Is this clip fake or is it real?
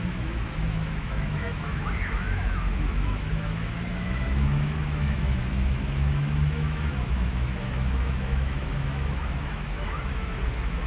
fake